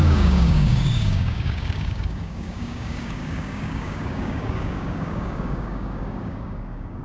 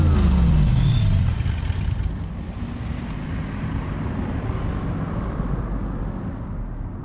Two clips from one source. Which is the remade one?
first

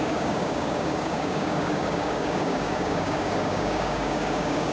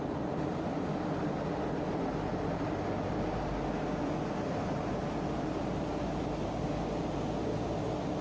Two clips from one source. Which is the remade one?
first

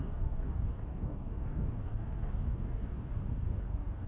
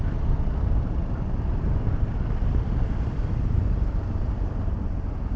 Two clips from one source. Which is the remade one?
first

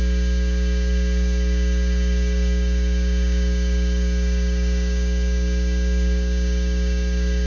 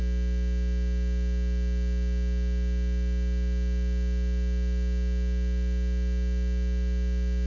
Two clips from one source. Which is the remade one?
first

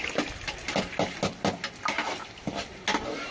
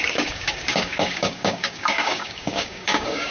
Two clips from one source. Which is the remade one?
second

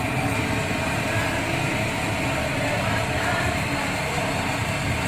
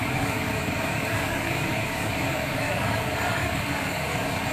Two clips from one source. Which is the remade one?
second